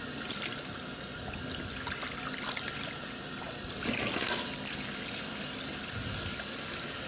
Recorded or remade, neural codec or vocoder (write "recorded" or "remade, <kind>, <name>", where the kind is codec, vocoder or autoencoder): recorded